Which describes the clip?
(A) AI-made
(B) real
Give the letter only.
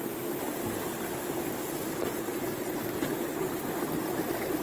B